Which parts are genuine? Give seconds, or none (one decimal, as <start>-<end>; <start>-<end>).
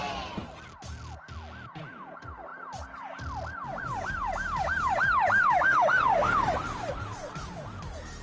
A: 0.0-8.2